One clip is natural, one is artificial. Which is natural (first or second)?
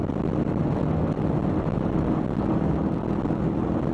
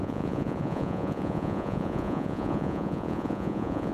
first